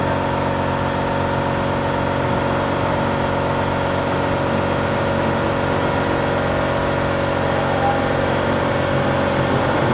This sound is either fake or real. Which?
real